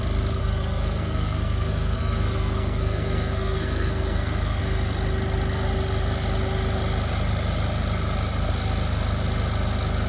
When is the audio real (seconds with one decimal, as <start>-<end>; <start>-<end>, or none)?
0.0-0.4; 4.6-10.1